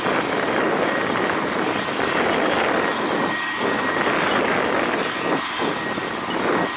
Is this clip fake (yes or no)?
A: no